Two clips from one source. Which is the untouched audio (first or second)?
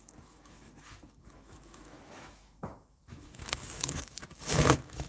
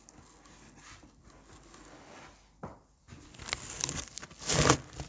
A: second